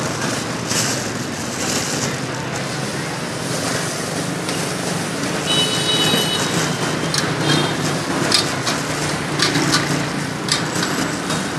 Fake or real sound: real